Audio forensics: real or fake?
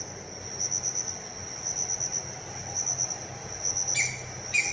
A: real